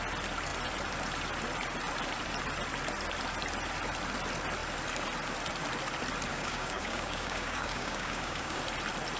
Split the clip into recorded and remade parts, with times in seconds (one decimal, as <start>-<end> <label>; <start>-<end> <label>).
0.0-6.3 recorded; 6.3-8.6 remade; 8.6-9.2 recorded